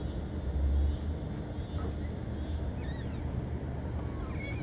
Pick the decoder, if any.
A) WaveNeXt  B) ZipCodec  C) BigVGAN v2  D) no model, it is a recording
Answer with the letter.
D